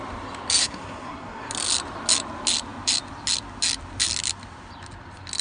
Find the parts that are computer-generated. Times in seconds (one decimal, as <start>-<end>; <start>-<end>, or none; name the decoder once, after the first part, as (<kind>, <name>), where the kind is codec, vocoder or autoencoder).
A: 0.6-1.5 (codec, SNAC)